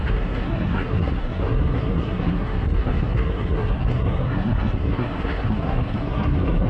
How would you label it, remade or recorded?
remade